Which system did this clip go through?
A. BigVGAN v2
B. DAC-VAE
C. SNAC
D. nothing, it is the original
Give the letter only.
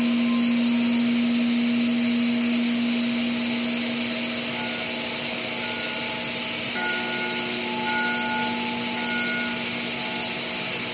D